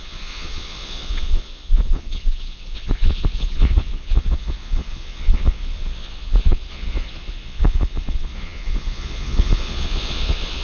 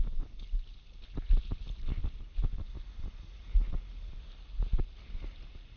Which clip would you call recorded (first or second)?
second